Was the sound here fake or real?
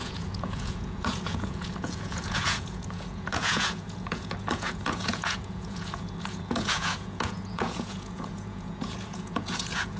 fake